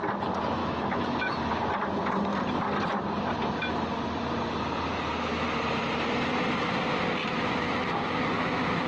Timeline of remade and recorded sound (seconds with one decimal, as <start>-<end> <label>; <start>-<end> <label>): 0.0-0.6 recorded; 0.6-1.5 remade; 1.5-7.2 recorded; 7.2-8.9 remade